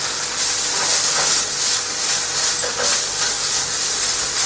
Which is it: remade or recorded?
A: recorded